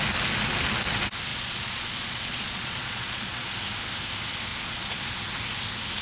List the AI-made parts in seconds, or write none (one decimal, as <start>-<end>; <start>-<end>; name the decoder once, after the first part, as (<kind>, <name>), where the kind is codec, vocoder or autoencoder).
1.3-3.5 (vocoder, Vocos); 4.5-5.3